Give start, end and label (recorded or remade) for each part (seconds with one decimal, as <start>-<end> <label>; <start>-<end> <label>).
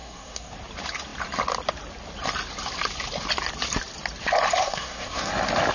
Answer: 0.0-0.5 remade; 0.5-4.6 recorded; 4.6-5.3 remade; 5.3-5.7 recorded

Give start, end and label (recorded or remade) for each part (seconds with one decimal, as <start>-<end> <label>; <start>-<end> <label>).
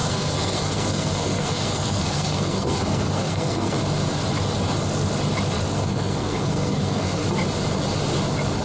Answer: 0.0-3.8 remade; 3.8-5.7 recorded; 5.7-7.2 remade; 7.2-8.6 recorded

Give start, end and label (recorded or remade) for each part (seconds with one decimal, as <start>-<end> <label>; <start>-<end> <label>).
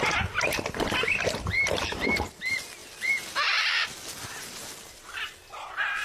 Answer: 0.0-6.0 recorded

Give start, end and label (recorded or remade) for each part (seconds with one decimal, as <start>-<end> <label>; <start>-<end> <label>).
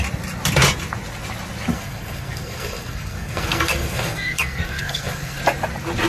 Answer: 0.0-1.7 recorded; 1.7-5.4 remade; 5.4-6.1 recorded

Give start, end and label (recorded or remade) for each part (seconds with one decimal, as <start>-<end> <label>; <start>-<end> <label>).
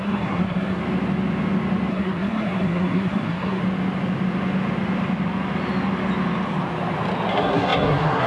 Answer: 0.0-0.8 remade; 0.8-1.9 recorded; 1.9-3.6 remade; 3.6-7.3 recorded; 7.3-8.3 remade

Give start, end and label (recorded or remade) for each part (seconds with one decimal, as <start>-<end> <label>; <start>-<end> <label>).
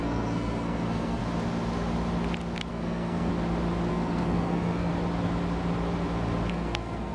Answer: 0.0-1.2 remade; 1.2-2.7 recorded; 2.7-3.3 remade; 3.3-3.9 recorded; 3.9-4.9 remade; 4.9-6.5 recorded; 6.5-7.1 remade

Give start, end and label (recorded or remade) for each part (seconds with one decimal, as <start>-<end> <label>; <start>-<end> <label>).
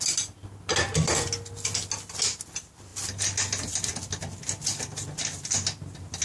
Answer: 0.0-6.2 recorded